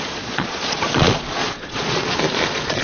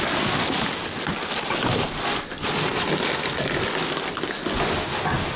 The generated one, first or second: first